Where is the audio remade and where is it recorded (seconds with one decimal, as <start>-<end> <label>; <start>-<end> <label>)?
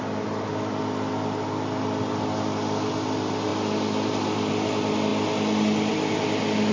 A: 0.0-6.7 recorded